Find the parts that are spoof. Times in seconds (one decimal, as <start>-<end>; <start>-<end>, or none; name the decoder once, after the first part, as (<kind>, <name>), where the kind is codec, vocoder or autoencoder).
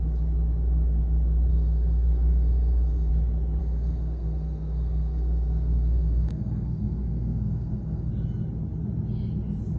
1.5-3.1 (codec, SNAC); 3.6-8.1